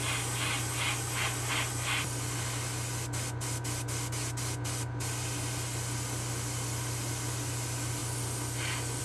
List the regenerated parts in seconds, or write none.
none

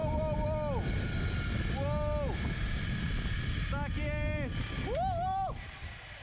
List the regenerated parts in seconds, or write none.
none